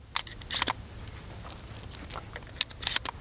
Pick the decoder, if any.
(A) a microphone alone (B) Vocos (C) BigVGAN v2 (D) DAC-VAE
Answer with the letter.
A